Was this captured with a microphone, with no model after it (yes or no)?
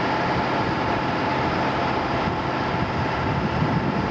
yes